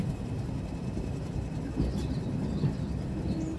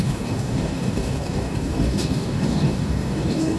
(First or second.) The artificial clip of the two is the second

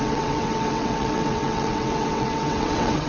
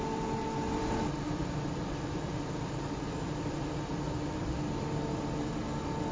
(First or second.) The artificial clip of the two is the first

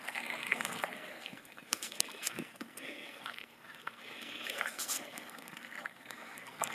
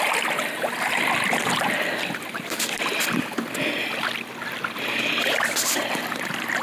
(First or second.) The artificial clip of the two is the first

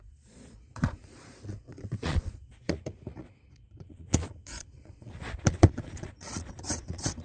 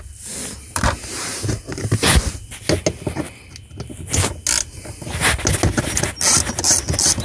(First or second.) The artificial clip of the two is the first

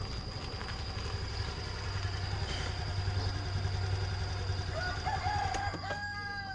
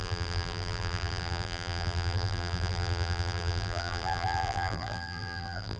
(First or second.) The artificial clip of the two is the second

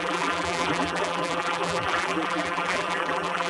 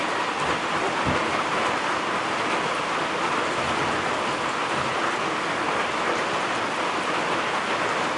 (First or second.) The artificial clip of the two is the first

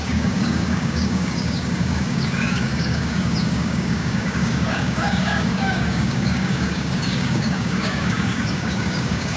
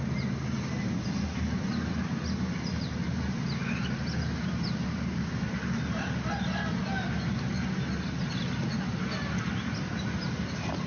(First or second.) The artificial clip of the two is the first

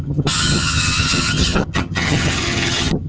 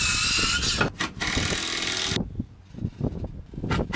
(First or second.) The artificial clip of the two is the first